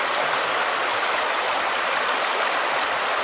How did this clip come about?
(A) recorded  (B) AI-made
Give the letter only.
A